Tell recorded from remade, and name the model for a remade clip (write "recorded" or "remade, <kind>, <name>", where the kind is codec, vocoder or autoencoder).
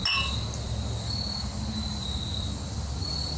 recorded